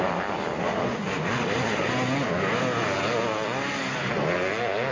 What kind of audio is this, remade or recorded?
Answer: recorded